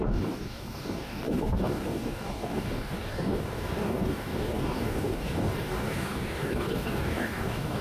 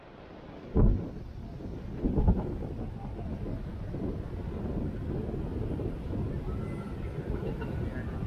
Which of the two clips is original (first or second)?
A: second